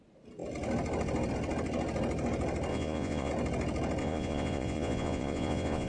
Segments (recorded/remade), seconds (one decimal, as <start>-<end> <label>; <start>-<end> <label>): 0.0-2.7 recorded; 2.7-3.3 remade; 3.3-4.0 recorded; 4.0-5.9 remade